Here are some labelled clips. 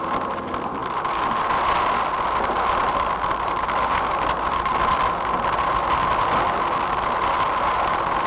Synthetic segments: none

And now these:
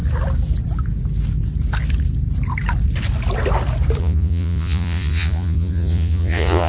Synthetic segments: 4.0-6.7 (vocoder, Vocos)